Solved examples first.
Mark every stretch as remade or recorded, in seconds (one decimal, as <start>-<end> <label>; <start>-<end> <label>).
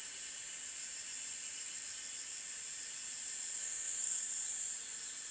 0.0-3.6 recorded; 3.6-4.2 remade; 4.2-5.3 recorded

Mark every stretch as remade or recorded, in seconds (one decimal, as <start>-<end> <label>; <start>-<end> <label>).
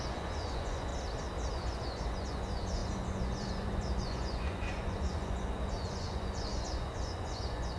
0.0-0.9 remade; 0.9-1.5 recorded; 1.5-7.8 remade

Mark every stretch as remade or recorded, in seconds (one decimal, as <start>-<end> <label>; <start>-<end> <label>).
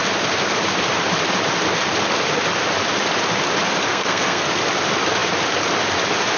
0.0-3.9 recorded; 3.9-4.5 remade; 4.5-6.4 recorded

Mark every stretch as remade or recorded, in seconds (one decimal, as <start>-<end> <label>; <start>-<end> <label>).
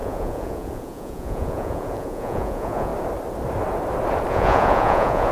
0.0-2.9 remade; 2.9-4.3 recorded; 4.3-5.3 remade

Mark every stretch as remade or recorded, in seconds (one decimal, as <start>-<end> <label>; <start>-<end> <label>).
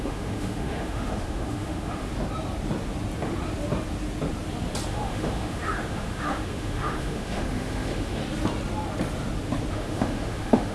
0.0-2.1 remade; 2.1-4.9 recorded; 4.9-8.2 remade; 8.2-9.7 recorded; 9.7-10.7 remade